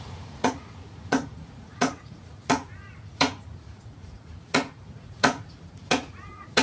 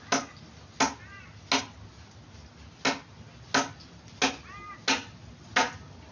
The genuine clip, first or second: second